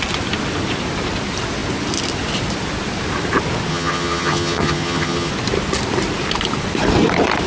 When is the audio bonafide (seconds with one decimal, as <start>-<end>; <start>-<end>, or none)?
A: 0.0-3.7; 5.3-7.5